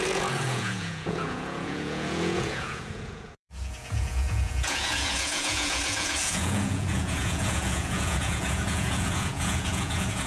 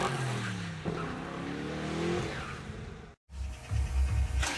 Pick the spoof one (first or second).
first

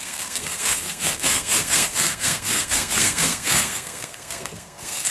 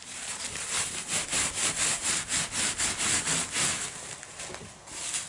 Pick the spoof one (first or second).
first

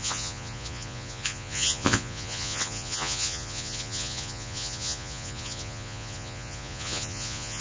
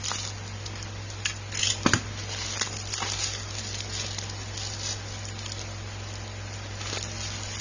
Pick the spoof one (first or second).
first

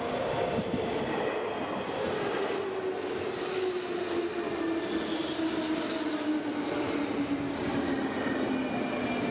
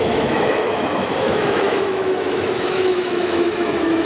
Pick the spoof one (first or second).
second